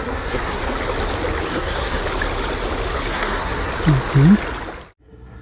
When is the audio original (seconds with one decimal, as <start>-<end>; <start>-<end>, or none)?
0.6-1.5; 2.0-3.1; 3.7-5.0